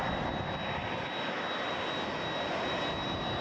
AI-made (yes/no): no